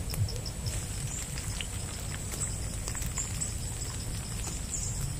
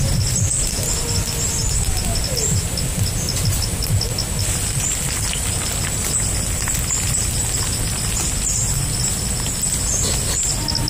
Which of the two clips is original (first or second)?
second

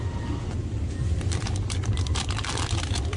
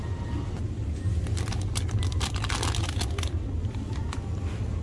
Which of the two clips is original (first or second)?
second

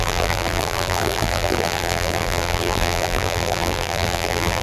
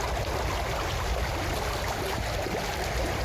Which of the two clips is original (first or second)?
second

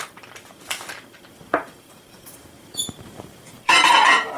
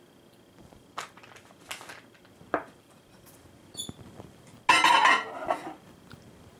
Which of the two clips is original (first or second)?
second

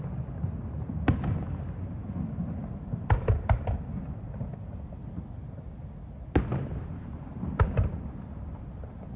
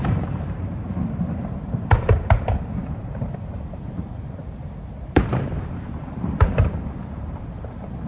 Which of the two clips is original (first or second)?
first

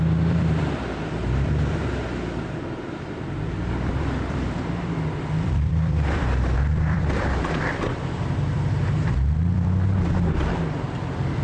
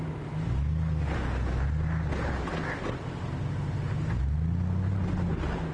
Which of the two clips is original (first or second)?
second